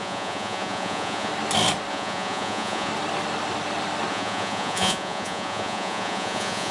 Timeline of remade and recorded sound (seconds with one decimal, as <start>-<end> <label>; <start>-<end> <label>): 0.0-1.3 remade; 1.3-1.9 recorded; 1.9-2.9 remade; 2.9-4.1 recorded; 4.1-6.7 remade